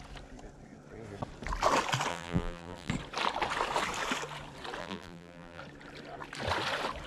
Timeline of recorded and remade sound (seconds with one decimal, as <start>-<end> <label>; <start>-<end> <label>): 0.0-2.1 recorded; 2.1-2.9 remade; 2.9-4.8 recorded; 4.8-5.6 remade; 5.6-7.1 recorded